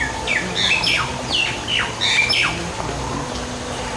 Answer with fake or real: real